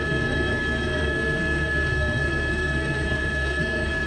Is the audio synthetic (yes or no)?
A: yes